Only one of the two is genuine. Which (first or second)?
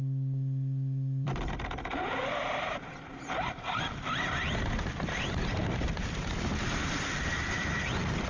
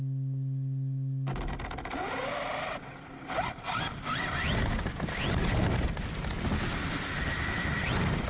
second